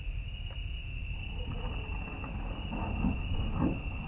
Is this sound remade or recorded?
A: recorded